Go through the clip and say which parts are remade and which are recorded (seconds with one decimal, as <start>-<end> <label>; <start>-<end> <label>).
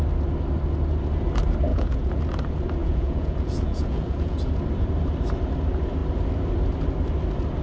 0.0-1.7 recorded; 1.7-2.2 remade; 2.2-2.8 recorded; 2.8-4.5 remade; 4.5-7.6 recorded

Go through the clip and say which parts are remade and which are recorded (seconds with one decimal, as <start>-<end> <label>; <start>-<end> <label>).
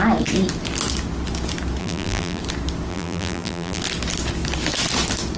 0.0-1.8 recorded; 1.8-2.4 remade; 2.4-2.9 recorded; 2.9-3.8 remade; 3.8-5.4 recorded